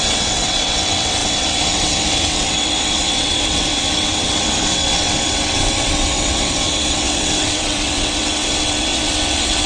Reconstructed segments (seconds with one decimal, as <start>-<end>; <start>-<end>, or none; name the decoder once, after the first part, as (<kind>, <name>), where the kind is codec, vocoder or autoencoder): 0.0-9.7 (vocoder, WaveNeXt)